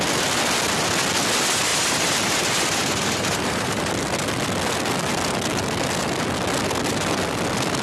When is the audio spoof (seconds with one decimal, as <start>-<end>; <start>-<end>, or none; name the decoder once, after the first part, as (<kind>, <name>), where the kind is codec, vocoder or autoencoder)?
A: 1.7-3.9 (vocoder, BigVGAN v2)